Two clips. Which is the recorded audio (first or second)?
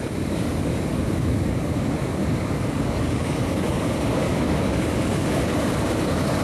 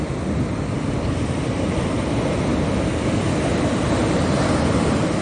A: second